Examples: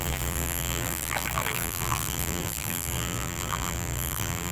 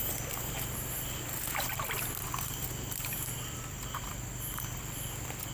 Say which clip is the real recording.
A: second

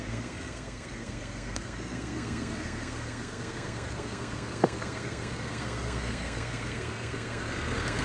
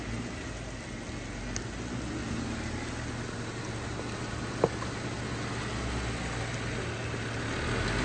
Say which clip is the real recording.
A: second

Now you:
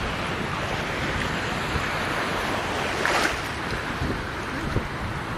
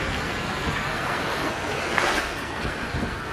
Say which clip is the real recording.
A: first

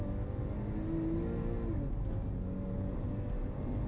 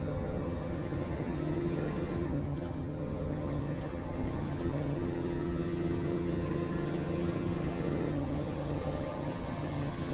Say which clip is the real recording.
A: first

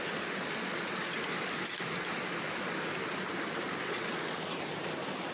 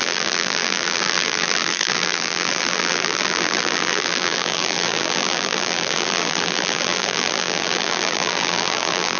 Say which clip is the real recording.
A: first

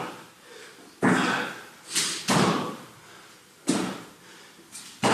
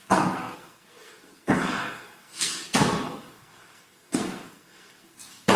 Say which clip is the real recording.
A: first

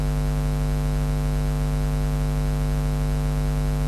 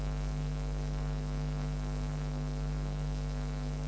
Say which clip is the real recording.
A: first